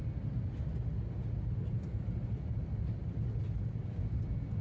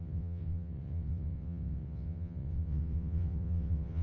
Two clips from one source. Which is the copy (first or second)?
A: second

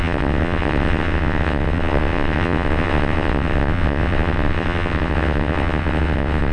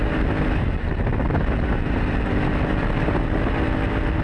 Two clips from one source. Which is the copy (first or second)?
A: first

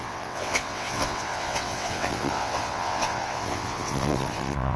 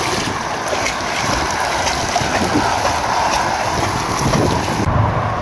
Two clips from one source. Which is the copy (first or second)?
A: first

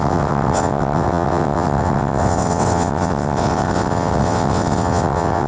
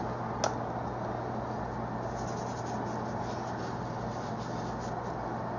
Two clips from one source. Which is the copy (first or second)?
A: first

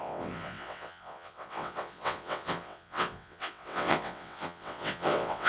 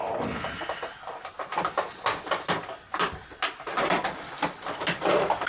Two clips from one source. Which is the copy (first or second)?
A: first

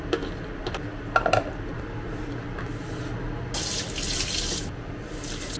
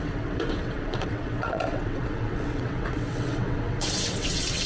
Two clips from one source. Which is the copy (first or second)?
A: second